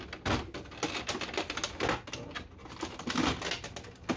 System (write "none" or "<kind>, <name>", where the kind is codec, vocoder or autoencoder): none